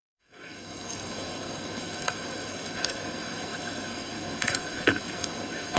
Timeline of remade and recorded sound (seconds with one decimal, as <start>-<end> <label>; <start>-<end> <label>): 0.0-5.8 remade